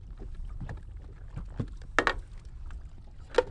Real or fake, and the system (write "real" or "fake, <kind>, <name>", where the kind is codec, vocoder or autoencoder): real